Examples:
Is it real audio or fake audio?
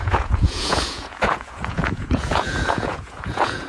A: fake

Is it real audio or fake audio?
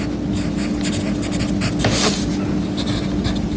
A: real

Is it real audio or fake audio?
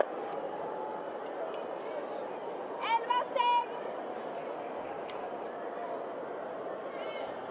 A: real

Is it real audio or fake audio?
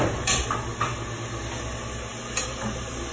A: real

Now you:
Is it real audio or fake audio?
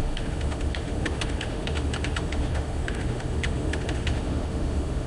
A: fake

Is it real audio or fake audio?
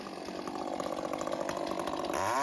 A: real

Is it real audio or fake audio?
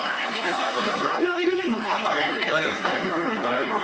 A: fake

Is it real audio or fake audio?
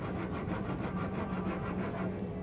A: real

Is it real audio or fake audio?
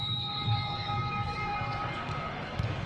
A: fake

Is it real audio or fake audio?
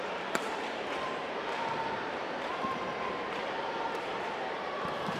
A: fake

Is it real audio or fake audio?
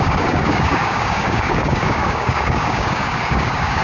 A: fake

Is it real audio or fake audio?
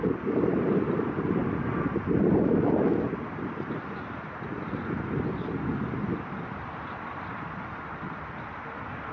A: real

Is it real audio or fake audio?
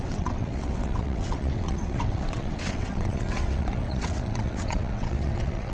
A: fake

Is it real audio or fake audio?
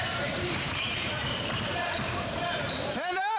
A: fake